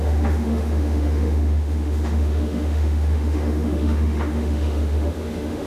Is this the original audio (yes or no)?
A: no